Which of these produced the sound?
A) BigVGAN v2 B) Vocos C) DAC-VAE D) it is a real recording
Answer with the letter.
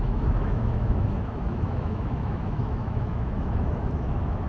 C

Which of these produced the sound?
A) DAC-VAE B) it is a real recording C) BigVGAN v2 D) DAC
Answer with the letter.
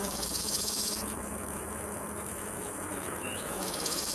A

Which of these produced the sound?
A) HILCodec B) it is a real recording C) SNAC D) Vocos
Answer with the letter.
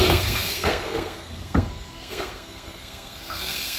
C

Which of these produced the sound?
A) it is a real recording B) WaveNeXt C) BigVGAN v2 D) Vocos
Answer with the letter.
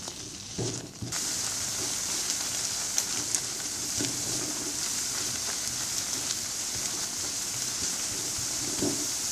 C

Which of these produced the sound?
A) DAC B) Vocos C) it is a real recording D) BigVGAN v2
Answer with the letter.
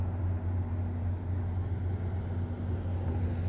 C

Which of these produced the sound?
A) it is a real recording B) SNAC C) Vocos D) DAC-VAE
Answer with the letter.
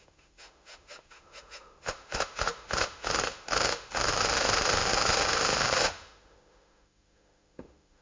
D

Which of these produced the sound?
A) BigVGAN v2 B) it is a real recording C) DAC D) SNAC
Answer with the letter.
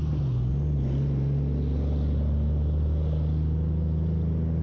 B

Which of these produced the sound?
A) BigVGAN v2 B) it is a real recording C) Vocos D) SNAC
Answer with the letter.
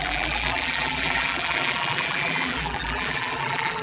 A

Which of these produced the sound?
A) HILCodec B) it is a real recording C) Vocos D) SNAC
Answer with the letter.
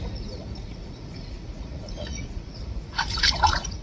C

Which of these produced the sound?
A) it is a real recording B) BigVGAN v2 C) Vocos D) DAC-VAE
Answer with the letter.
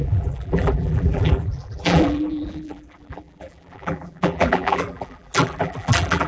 B